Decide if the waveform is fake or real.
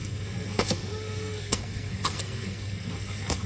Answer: fake